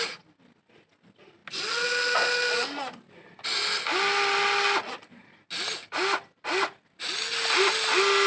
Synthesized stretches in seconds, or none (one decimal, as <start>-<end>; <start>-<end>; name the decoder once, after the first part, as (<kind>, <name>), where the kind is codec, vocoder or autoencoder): none